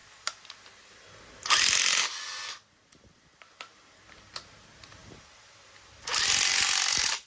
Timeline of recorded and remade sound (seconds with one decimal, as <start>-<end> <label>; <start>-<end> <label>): 0.0-7.3 recorded